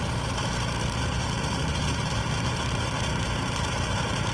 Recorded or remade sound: remade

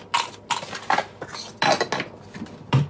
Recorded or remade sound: recorded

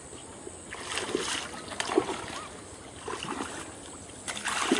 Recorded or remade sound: recorded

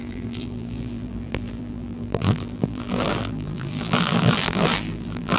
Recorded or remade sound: remade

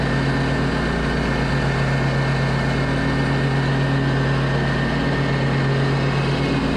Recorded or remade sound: recorded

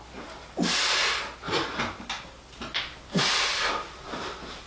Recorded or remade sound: recorded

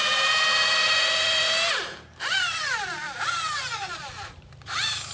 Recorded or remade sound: remade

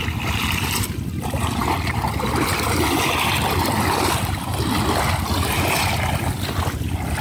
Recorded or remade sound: recorded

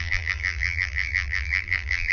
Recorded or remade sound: remade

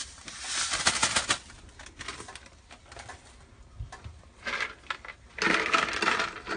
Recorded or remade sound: recorded